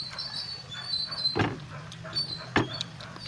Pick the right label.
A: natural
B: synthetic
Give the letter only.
A